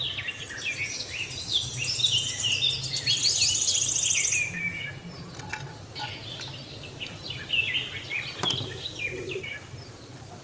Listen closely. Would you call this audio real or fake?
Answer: real